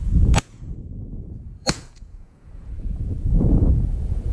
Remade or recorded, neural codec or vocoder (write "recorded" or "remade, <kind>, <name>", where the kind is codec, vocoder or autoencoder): remade, vocoder, Vocos